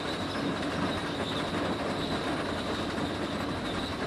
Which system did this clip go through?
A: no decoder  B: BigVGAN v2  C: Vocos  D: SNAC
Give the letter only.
A